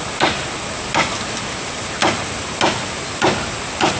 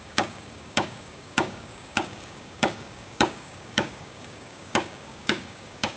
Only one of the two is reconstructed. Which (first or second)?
second